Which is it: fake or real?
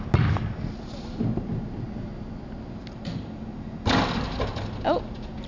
real